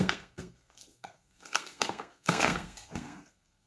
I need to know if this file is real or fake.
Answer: fake